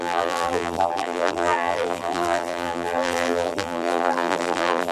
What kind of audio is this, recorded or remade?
remade